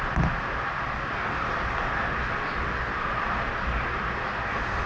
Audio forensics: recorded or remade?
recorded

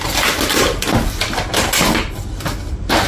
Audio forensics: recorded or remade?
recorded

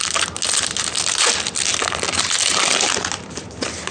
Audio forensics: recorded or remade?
recorded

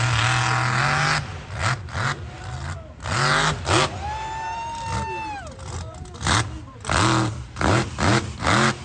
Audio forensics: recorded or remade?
recorded